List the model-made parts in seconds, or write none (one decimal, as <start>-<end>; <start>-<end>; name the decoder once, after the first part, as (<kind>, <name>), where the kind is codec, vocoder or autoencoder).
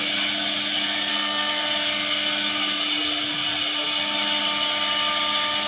1.1-1.6 (codec, SNAC)